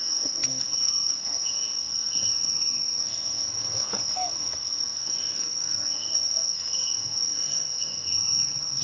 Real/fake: fake